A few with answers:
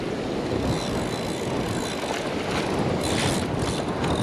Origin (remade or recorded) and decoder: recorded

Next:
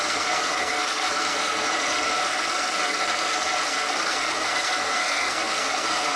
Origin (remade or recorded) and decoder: remade, codec, SNAC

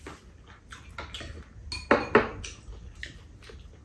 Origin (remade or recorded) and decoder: recorded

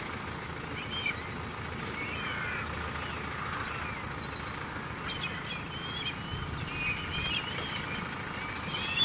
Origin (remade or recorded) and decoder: recorded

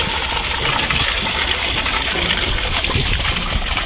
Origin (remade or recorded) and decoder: recorded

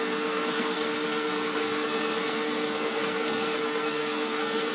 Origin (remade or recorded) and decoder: remade, codec, SNAC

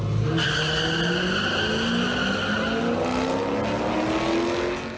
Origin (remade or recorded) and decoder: recorded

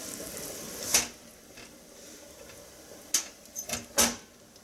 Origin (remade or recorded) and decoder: recorded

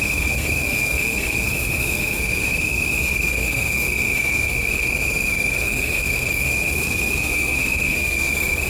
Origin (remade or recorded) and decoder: remade, codec, SNAC